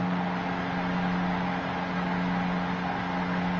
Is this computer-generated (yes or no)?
no